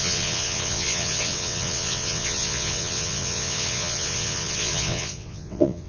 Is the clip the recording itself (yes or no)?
no